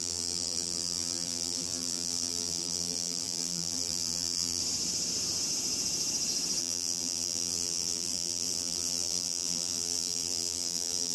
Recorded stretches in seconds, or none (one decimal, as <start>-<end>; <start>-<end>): 4.6-6.6